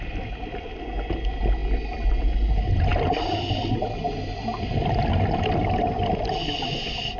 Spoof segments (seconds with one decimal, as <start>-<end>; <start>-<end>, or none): none